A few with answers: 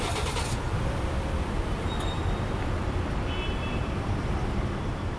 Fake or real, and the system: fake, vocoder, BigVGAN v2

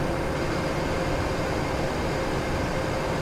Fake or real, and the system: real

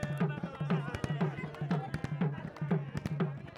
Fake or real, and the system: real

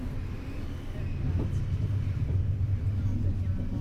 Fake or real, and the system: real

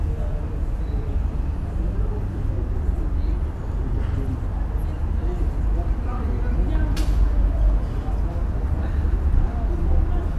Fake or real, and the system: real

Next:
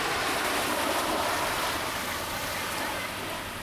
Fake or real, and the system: real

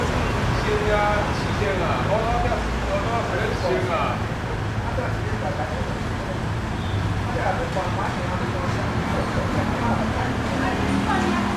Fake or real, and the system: real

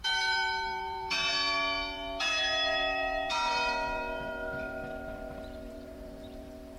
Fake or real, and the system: fake, vocoder, BigVGAN v2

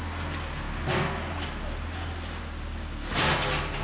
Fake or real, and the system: real